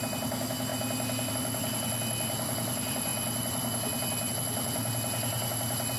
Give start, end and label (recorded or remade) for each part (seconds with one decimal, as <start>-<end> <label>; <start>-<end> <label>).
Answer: 0.0-6.0 recorded